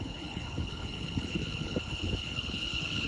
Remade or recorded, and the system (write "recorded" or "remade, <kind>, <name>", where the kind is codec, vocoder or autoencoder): remade, codec, HILCodec